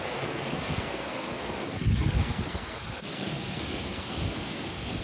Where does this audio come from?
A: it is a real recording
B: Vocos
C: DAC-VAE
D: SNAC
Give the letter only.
D